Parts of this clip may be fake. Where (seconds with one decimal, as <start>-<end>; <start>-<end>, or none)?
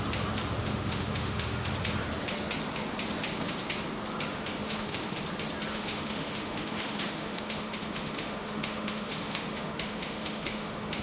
0.6-1.7; 4.3-5.2; 5.7-11.0